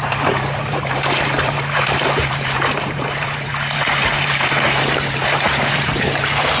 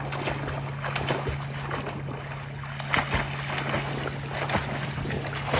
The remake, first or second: first